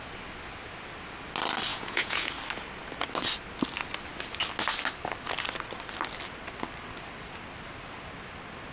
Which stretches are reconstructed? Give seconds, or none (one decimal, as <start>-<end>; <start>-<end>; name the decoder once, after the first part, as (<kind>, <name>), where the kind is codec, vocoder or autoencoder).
1.7-2.3 (vocoder, Vocos)